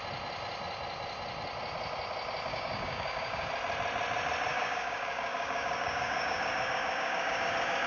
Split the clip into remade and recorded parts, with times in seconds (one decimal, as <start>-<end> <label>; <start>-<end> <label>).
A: 0.0-2.5 recorded; 2.5-3.5 remade; 3.5-4.5 recorded; 4.5-7.9 remade